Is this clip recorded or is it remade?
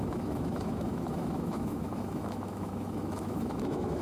remade